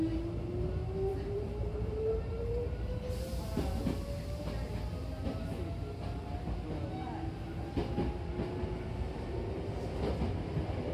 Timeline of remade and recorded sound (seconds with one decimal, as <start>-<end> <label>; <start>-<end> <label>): 0.0-1.1 recorded; 1.1-3.6 remade; 3.6-10.9 recorded